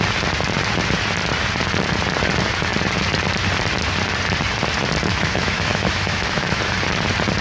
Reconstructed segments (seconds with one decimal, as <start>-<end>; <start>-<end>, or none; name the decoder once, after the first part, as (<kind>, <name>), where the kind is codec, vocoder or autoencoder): 5.1-6.6 (autoencoder, DAC-VAE)